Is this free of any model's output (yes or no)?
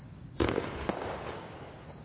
no